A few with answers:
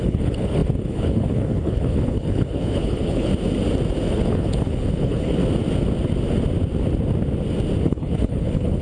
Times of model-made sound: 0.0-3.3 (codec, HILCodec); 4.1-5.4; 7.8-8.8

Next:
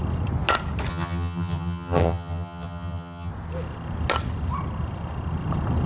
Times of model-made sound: 0.9-3.3 (vocoder, HiFi-GAN)

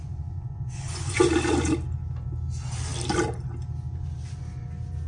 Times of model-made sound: 0.0-1.3 (vocoder, Vocos)

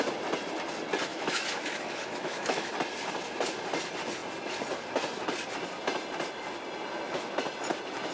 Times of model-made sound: 1.1-2.7 (autoencoder, DAC-VAE)

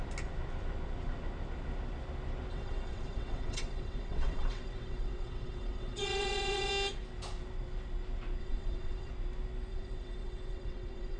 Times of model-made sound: 2.5-6.7 (vocoder, WaveNeXt); 8.4-9.1; 9.7-11.2